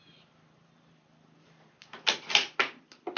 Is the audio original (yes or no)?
yes